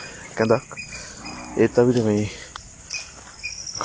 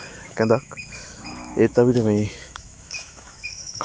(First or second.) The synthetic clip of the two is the second